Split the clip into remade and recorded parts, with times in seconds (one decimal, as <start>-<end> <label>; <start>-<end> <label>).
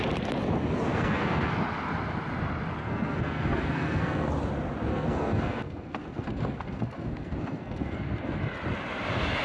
0.0-0.9 recorded; 0.9-1.5 remade; 1.5-2.8 recorded; 2.8-4.3 remade; 4.3-4.9 recorded; 4.9-8.4 remade; 8.4-9.4 recorded